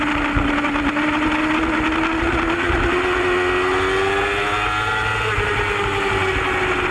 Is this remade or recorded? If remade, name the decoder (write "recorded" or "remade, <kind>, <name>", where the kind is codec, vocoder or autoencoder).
recorded